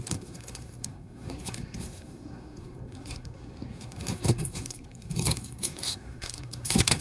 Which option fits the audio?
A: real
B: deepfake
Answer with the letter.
B